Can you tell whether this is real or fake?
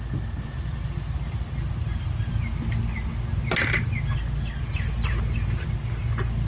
real